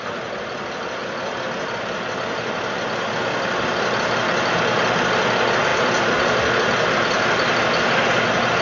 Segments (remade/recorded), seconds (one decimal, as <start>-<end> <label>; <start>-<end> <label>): 0.0-8.6 recorded